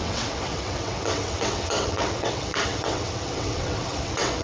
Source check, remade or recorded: remade